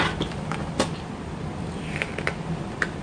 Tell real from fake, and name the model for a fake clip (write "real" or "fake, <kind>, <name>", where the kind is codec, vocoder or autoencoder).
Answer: fake, vocoder, BigVGAN v2